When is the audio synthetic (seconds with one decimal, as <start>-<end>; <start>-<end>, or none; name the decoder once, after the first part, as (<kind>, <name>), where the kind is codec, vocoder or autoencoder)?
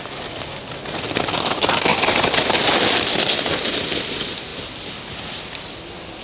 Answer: 1.9-2.6 (vocoder, BigVGAN v2)